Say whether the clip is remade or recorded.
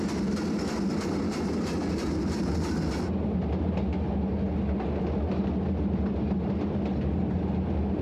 recorded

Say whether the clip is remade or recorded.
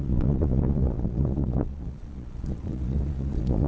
remade